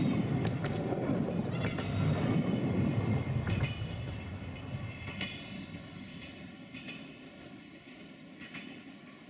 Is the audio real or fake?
real